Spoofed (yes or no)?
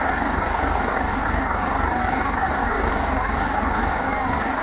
yes